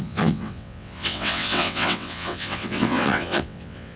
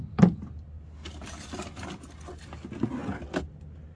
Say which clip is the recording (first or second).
second